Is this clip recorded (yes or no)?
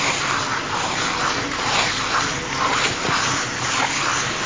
yes